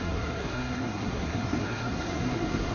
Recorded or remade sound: remade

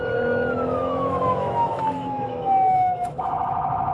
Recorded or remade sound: remade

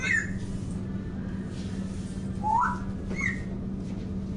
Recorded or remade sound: recorded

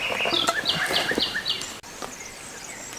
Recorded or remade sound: recorded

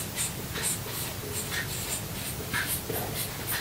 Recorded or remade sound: recorded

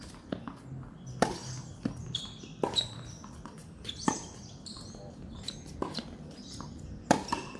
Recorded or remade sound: recorded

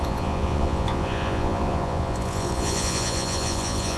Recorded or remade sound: remade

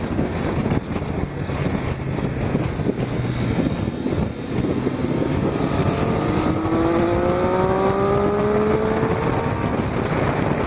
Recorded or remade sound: recorded